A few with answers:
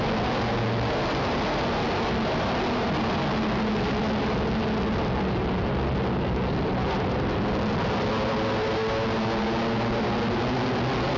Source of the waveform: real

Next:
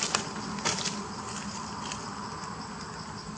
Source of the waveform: real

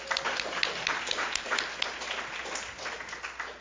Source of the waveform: real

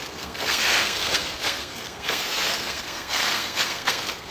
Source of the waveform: fake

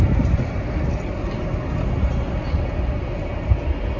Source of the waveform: real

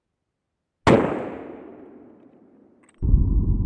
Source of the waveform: real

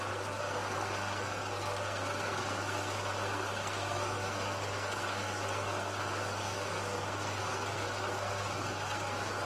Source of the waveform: fake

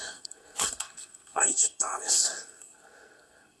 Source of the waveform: fake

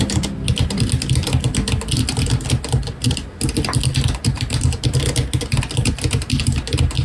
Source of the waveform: real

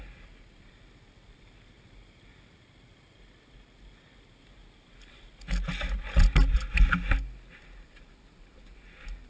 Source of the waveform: real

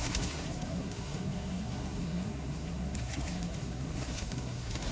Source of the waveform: fake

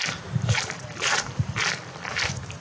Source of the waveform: real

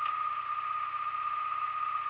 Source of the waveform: real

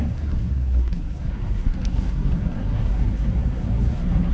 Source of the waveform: fake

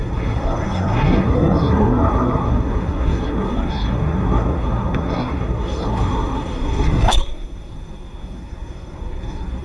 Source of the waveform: fake